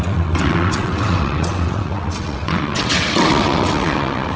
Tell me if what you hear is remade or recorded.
remade